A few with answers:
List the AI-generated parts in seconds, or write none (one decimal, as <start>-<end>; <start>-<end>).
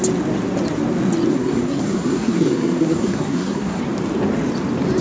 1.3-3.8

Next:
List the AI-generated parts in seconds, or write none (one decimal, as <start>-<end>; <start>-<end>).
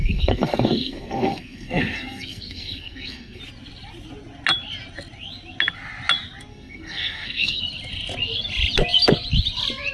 0.0-3.4; 6.5-7.6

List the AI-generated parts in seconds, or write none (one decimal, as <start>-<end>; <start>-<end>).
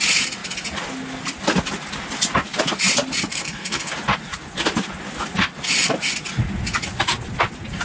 3.3-3.9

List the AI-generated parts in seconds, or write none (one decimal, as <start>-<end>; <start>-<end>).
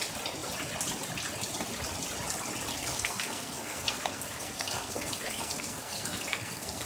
2.7-6.9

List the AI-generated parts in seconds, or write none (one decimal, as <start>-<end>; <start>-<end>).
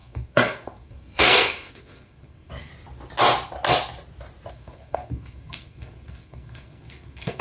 0.0-2.7; 4.5-7.4